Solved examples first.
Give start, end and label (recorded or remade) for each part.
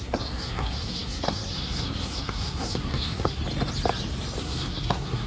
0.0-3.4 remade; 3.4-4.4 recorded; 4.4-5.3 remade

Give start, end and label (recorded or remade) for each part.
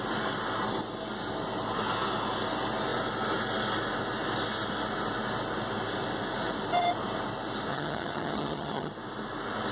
0.0-7.7 recorded; 7.7-8.9 remade; 8.9-9.7 recorded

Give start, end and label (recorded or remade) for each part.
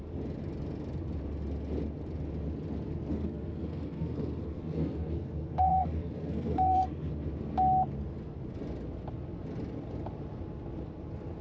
0.0-3.1 recorded; 3.1-7.1 remade; 7.1-11.4 recorded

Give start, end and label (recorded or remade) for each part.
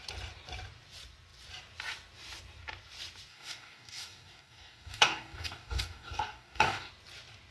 0.0-3.3 recorded; 3.3-6.9 remade; 6.9-7.5 recorded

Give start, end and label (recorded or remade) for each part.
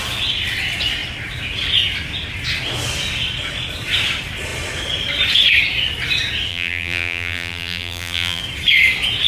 0.0-6.5 recorded; 6.5-8.4 remade; 8.4-9.3 recorded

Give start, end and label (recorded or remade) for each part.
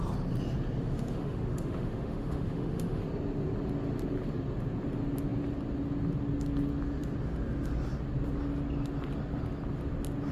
0.0-0.8 recorded; 0.8-3.0 remade; 3.0-10.3 recorded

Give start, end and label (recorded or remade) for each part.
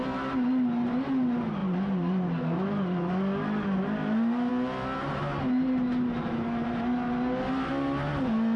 0.0-8.6 recorded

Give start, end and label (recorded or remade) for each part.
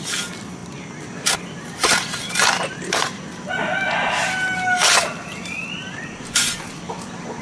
0.0-7.4 recorded